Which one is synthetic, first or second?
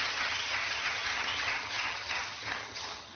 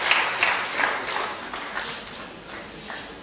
first